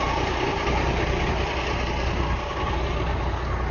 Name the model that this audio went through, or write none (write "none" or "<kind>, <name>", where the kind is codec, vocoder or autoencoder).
none